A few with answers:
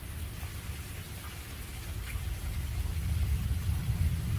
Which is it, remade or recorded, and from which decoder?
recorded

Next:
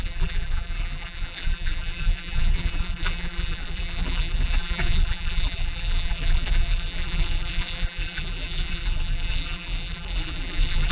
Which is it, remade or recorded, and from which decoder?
remade, vocoder, BigVGAN v2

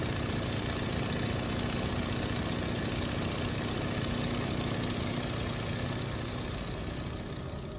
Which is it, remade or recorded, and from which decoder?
recorded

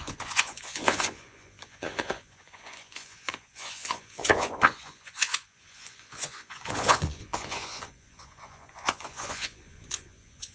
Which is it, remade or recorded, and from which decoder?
remade, vocoder, Vocos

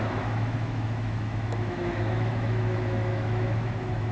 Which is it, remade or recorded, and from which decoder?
remade, autoencoder, DAC-VAE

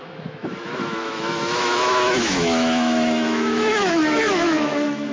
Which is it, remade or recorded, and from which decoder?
remade, autoencoder, DAC-VAE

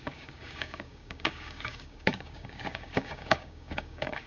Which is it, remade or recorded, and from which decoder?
remade, codec, DAC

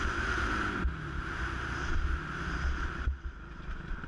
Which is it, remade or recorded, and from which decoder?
recorded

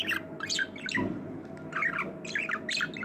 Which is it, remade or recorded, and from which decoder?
recorded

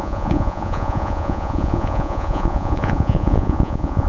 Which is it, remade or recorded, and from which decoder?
remade, vocoder, Vocos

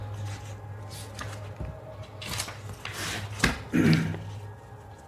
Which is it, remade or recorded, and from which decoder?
recorded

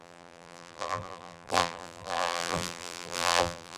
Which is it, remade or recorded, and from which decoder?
remade, vocoder, BigVGAN v2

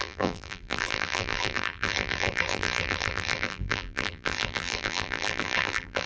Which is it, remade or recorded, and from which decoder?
remade, vocoder, BigVGAN v2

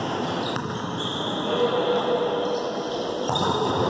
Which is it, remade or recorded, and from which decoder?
recorded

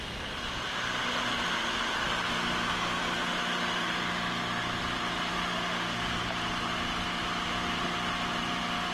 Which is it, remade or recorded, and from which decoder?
recorded